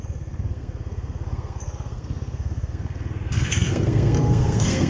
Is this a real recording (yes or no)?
no